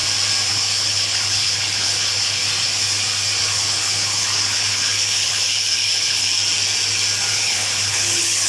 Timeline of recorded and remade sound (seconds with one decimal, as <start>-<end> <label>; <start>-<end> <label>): 0.0-0.5 recorded; 0.5-2.4 remade; 2.4-3.4 recorded; 3.4-6.3 remade; 6.3-7.3 recorded; 7.3-8.5 remade